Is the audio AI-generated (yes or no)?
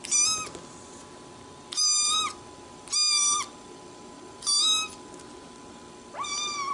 no